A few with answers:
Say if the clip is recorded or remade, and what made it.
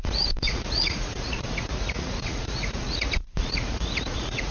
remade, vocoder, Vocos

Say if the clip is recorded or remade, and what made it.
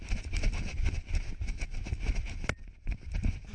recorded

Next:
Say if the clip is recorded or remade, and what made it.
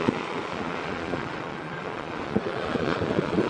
remade, vocoder, Vocos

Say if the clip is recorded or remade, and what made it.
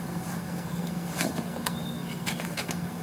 remade, codec, SNAC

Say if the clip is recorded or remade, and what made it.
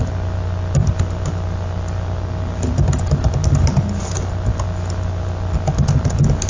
recorded